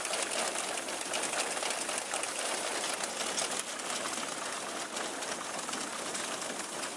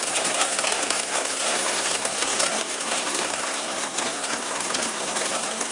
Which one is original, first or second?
first